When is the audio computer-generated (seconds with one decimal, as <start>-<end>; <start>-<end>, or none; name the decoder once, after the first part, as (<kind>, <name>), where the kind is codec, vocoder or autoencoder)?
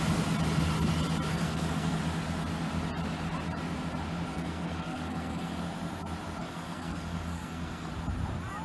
1.3-2.0 (codec, SNAC); 4.3-5.6; 6.4-7.9